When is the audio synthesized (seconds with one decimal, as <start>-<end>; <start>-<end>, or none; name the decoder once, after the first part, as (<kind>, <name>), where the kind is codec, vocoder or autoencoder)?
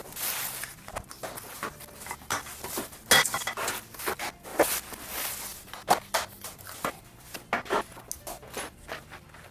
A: 4.5-5.1 (vocoder, BigVGAN v2); 5.5-7.5